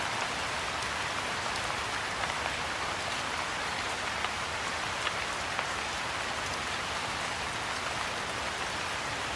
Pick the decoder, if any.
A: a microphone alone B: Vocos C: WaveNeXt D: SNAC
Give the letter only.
A